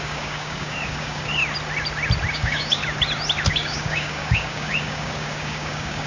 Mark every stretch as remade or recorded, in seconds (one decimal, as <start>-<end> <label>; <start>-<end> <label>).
0.0-1.4 remade; 1.4-2.3 recorded; 2.3-2.8 remade; 2.8-3.5 recorded; 3.5-6.1 remade